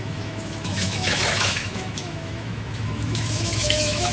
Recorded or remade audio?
remade